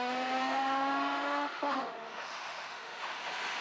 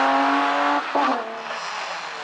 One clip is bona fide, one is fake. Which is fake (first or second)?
first